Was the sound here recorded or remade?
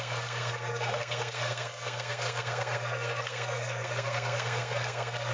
remade